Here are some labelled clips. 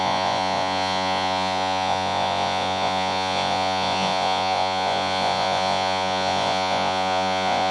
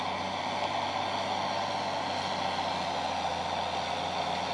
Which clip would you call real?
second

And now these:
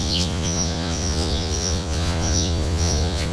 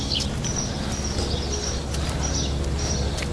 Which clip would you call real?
second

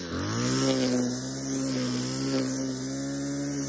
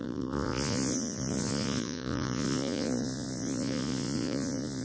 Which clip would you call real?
first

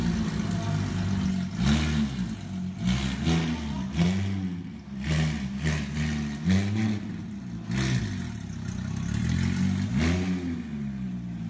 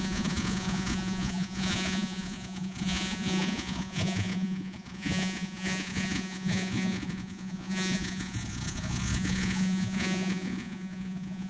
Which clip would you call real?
first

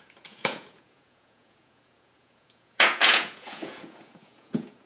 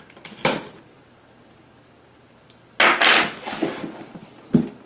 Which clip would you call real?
second